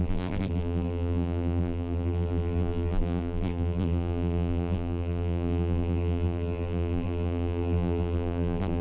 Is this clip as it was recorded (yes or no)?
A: no